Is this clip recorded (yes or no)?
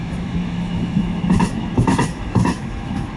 no